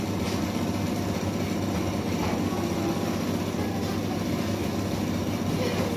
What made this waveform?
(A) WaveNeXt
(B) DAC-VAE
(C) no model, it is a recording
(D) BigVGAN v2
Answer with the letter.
C